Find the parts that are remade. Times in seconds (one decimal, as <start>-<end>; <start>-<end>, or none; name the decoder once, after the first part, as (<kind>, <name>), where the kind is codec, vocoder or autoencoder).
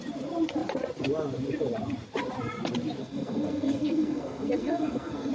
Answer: 3.0-5.3 (codec, SNAC)